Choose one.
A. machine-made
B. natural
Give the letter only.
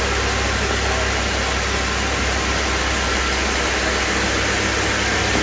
B